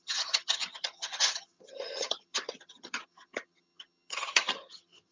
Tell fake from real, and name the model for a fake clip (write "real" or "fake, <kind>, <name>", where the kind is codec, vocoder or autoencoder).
fake, vocoder, HiFi-GAN